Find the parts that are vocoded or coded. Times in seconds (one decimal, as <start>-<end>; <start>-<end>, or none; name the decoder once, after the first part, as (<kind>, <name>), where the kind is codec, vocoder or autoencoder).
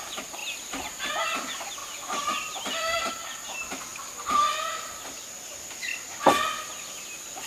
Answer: 0.4-1.1 (vocoder, BigVGAN v2); 1.8-3.1; 3.9-4.4; 5.9-6.6